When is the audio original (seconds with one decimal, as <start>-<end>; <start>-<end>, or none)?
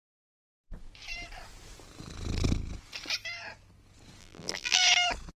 0.0-4.2; 4.8-5.4